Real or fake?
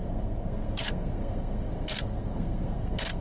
fake